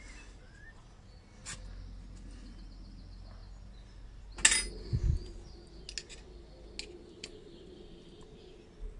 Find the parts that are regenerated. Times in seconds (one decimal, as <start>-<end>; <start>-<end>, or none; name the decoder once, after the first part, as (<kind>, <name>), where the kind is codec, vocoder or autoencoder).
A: none